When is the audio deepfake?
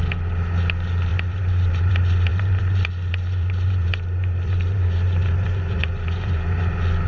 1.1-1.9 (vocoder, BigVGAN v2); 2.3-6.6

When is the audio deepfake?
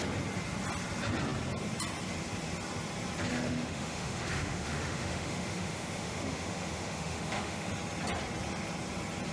3.3-7.7 (autoencoder, DAC-VAE)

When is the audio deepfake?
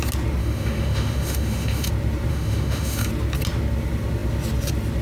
0.4-1.9 (autoencoder, DAC-VAE); 2.3-3.1